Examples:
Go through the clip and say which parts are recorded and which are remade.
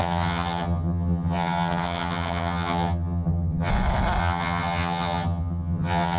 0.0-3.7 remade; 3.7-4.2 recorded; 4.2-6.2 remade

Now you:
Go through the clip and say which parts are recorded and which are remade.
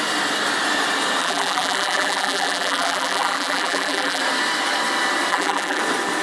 0.0-1.2 recorded; 1.2-4.2 remade; 4.2-5.3 recorded; 5.3-5.8 remade; 5.8-6.2 recorded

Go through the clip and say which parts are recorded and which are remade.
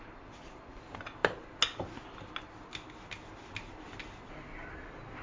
0.0-5.2 recorded